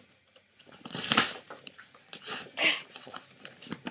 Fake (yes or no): yes